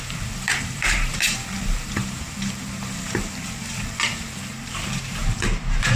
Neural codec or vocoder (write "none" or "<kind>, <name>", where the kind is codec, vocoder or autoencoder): vocoder, BigVGAN v2